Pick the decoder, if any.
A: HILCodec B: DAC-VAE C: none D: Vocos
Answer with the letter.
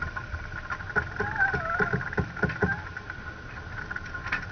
C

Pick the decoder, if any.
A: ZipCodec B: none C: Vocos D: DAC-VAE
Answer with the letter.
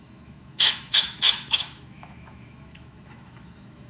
D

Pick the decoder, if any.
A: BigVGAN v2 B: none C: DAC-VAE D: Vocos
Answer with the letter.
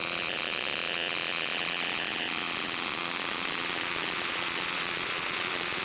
D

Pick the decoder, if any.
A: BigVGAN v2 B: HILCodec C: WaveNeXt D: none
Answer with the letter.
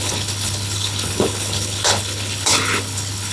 B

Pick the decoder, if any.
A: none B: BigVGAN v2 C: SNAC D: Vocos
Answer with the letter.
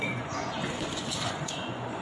D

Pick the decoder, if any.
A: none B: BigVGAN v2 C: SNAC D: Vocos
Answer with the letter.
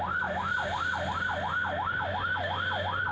A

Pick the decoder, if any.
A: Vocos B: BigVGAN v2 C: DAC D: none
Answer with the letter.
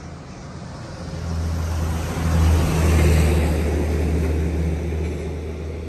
D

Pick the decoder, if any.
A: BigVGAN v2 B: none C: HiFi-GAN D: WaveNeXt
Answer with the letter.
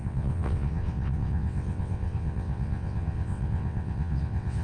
D